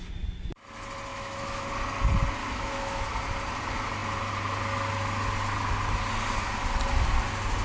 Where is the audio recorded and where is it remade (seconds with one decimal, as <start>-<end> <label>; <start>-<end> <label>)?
0.0-1.1 recorded; 1.1-1.7 remade; 1.7-2.4 recorded; 2.4-3.1 remade; 3.1-7.6 recorded